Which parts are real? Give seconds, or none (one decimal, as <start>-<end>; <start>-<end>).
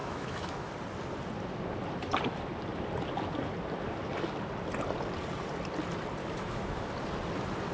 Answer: 0.7-6.2; 6.9-7.7